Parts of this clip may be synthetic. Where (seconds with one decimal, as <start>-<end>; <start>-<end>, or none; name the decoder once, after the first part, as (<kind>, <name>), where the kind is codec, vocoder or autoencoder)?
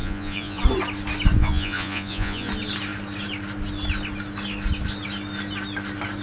0.0-0.6 (vocoder, Vocos); 1.4-2.5